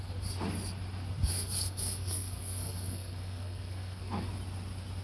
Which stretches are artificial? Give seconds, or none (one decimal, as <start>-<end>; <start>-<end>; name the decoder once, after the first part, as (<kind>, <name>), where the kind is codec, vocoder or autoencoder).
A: 1.3-4.3 (codec, SNAC)